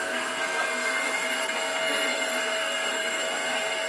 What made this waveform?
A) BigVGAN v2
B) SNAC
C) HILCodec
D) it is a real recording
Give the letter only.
B